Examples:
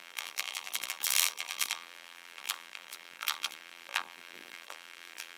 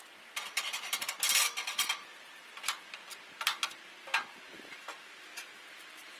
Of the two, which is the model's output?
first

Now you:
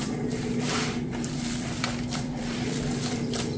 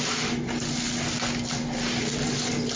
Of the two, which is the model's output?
first